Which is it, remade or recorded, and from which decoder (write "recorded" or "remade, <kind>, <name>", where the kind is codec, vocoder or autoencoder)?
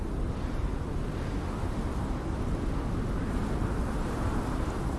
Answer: recorded